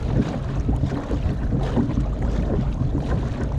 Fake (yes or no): no